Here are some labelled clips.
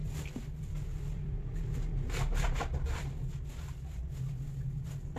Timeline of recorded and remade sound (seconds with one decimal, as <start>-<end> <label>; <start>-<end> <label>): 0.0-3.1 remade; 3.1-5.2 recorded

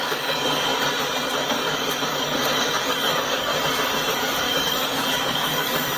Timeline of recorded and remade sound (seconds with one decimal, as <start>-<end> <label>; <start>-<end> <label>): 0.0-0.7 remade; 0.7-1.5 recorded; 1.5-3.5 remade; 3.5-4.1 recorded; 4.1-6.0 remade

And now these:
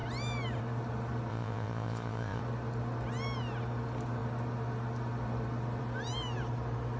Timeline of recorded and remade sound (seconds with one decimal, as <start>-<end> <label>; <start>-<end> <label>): 0.0-1.3 recorded; 1.3-2.4 remade; 2.4-7.0 recorded

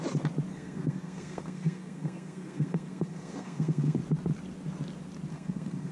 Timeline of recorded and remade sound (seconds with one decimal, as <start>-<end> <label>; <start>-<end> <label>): 0.0-0.5 recorded; 0.5-4.0 remade; 4.0-5.3 recorded; 5.3-5.9 remade

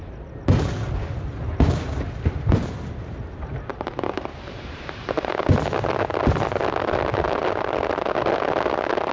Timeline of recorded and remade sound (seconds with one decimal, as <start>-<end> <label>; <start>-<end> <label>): 0.0-3.7 recorded; 3.7-5.3 remade; 5.3-9.1 recorded